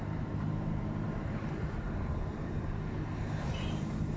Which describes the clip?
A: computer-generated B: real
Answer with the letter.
A